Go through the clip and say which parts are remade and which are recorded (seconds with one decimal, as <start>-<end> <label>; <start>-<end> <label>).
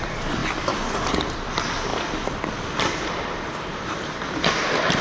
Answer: 0.0-0.4 recorded; 0.4-1.5 remade; 1.5-1.9 recorded; 1.9-5.0 remade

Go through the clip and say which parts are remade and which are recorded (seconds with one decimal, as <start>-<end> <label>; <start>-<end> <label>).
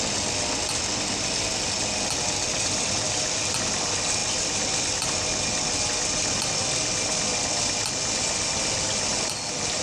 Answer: 0.0-9.8 recorded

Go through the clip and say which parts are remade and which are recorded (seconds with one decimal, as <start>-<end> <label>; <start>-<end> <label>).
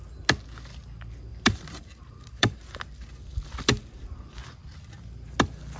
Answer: 0.0-1.3 recorded; 1.3-2.7 remade; 2.7-5.8 recorded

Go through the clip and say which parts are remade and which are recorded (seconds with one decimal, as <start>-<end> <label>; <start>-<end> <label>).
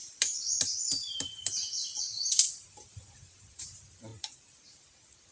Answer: 0.0-4.1 remade; 4.1-4.6 recorded; 4.6-5.3 remade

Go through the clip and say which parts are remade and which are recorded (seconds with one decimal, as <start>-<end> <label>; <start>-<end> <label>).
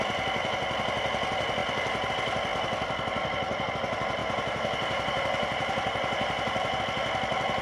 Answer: 0.0-4.2 recorded; 4.2-6.8 remade; 6.8-7.6 recorded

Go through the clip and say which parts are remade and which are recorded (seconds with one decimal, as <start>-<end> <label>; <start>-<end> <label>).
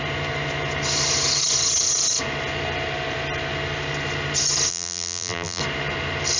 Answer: 0.0-4.7 recorded; 4.7-5.6 remade; 5.6-6.4 recorded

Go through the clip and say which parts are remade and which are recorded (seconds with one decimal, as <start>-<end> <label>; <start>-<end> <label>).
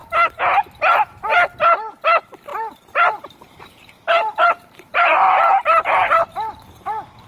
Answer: 0.0-2.5 recorded; 2.5-6.8 remade; 6.8-7.3 recorded